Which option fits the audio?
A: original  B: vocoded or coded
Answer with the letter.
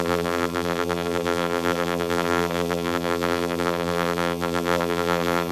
B